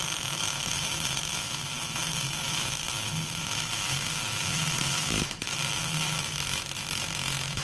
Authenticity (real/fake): fake